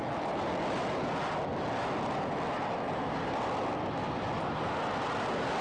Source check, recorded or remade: recorded